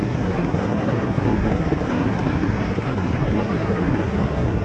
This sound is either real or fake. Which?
fake